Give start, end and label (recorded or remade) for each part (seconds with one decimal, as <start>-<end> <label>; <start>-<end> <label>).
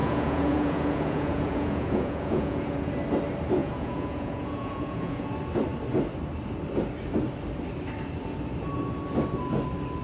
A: 0.0-2.9 remade; 2.9-3.6 recorded; 3.6-5.3 remade; 5.3-10.0 recorded